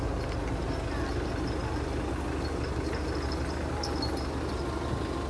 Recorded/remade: recorded